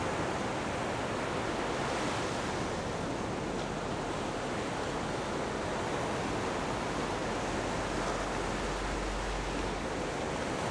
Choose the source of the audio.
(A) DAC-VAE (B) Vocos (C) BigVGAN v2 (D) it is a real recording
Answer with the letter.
D